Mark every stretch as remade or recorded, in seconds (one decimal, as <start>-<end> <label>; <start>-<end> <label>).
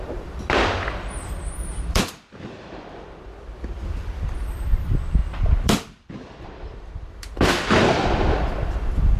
0.0-9.2 remade